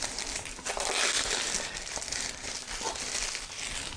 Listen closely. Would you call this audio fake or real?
real